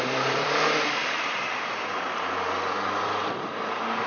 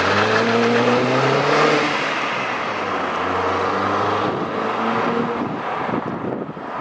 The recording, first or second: second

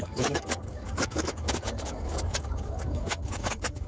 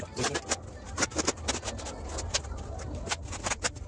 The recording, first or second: second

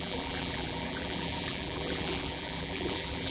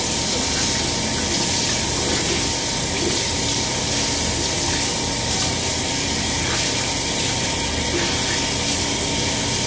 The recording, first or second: second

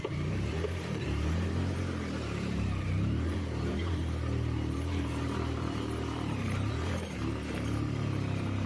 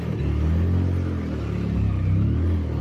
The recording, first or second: second